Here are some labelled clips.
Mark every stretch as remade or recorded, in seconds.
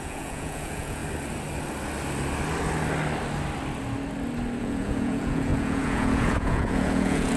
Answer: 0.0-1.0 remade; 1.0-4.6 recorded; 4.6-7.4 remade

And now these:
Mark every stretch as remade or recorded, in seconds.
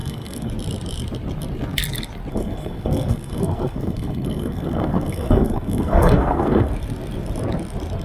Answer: 0.0-0.5 remade; 0.5-2.3 recorded; 2.3-6.7 remade; 6.7-8.0 recorded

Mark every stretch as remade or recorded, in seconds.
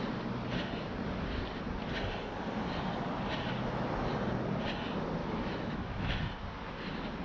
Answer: 0.0-5.2 recorded; 5.2-6.2 remade; 6.2-7.2 recorded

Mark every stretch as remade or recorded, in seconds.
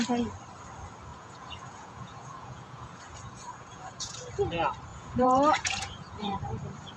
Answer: 0.0-1.1 recorded; 1.1-4.3 remade; 4.3-4.9 recorded; 4.9-6.4 remade; 6.4-7.0 recorded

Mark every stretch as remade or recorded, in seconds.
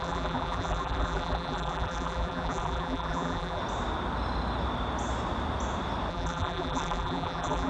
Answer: 0.0-3.6 remade; 3.6-6.1 recorded; 6.1-7.7 remade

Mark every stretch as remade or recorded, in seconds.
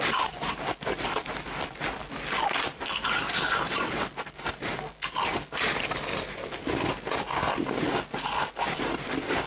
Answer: 0.0-9.5 recorded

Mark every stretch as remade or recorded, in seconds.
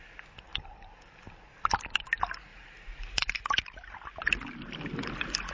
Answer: 0.0-0.5 recorded; 0.5-1.7 remade; 1.7-2.5 recorded; 2.5-3.3 remade; 3.3-5.5 recorded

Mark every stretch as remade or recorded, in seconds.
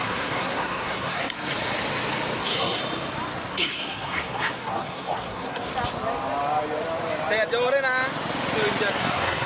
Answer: 0.0-1.5 remade; 1.5-2.4 recorded; 2.4-2.8 remade; 2.8-3.5 recorded; 3.5-5.7 remade; 5.7-8.9 recorded; 8.9-9.5 remade